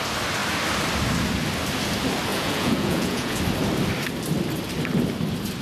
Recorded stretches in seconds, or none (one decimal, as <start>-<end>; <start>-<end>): 0.0-2.3; 3.4-5.6